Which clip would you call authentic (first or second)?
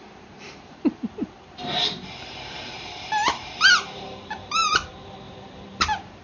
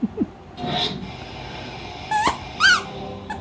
second